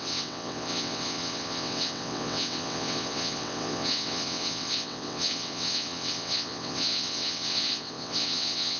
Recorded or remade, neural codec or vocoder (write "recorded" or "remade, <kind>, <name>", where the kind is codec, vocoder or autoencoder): remade, vocoder, WaveNeXt